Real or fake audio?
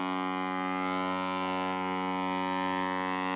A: real